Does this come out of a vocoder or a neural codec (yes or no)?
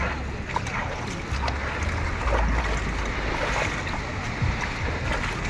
no